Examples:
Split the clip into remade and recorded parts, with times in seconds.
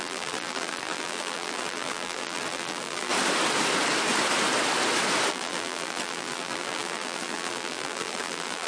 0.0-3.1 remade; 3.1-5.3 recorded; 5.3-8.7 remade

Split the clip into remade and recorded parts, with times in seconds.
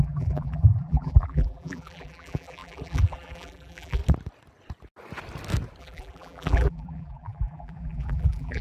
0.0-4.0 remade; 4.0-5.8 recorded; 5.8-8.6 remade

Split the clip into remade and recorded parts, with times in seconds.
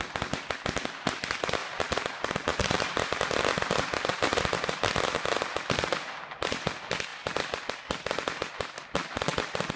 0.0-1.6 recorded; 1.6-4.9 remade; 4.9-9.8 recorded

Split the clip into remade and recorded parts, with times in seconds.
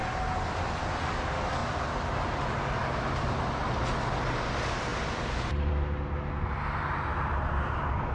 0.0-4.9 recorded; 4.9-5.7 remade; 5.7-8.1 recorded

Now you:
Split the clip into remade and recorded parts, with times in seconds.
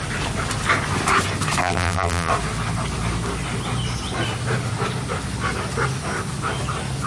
0.0-1.6 recorded; 1.6-2.3 remade; 2.3-7.1 recorded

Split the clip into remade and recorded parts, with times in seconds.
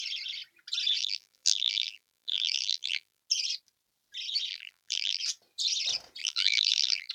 0.0-1.0 recorded; 1.0-3.2 remade; 3.2-4.5 recorded; 4.5-5.2 remade; 5.2-6.2 recorded; 6.2-7.1 remade